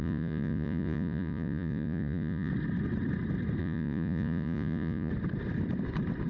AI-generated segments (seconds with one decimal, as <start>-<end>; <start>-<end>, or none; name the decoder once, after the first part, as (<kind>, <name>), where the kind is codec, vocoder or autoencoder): 0.0-2.5 (vocoder, Vocos); 3.6-5.1